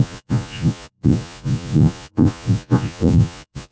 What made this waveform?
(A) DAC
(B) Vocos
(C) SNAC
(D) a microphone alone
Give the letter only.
B